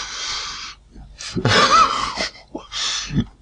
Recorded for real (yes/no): yes